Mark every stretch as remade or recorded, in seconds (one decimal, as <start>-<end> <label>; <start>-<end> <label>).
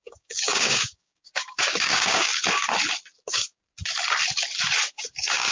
0.0-2.3 remade; 2.3-3.2 recorded; 3.2-3.6 remade; 3.6-4.9 recorded; 4.9-5.5 remade